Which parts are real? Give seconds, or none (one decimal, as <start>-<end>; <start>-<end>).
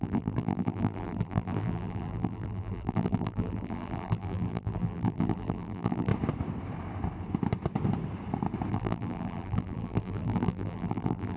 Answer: 6.1-8.7